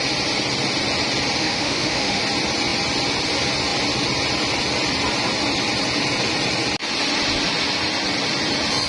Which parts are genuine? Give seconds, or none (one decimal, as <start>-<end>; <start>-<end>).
0.0-1.4; 2.2-8.9